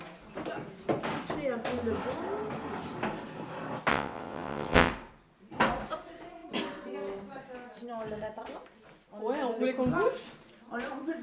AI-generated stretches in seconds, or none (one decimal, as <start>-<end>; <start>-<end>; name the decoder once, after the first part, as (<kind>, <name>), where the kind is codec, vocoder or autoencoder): 3.9-4.9 (vocoder, WaveNeXt)